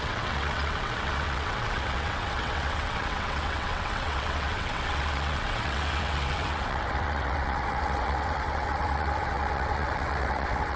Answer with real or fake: fake